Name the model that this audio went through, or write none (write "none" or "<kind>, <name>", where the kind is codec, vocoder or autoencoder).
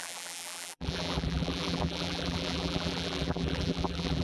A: vocoder, BigVGAN v2